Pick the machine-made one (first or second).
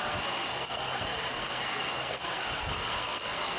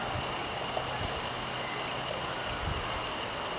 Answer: first